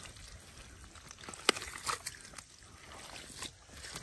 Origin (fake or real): real